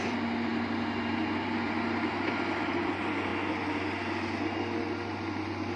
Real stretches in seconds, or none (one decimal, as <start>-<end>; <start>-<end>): 3.3-5.8